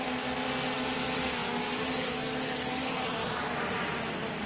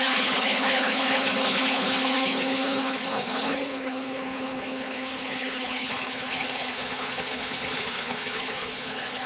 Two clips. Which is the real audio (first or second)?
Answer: first